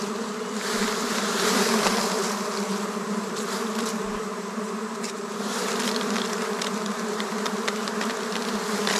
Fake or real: fake